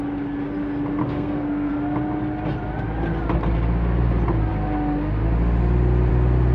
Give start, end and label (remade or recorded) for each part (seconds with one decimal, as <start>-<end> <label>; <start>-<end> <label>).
0.0-1.0 recorded; 1.0-1.7 remade; 1.7-6.5 recorded